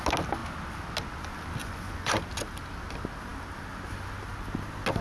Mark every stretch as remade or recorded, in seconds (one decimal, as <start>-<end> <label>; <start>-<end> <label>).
0.0-1.6 recorded; 1.6-2.2 remade; 2.2-5.0 recorded